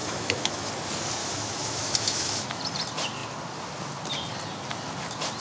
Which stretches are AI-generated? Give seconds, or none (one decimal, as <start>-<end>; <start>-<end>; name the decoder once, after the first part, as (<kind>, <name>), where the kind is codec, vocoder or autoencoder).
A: 0.0-0.7 (autoencoder, DAC-VAE); 1.2-2.6